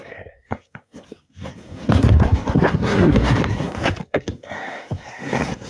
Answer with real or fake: fake